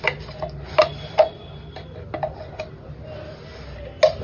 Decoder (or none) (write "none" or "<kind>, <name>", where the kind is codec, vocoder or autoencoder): none